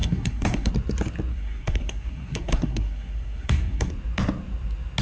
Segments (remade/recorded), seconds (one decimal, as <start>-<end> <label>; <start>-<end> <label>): 0.0-0.7 remade; 0.7-1.3 recorded; 1.3-3.9 remade; 3.9-5.0 recorded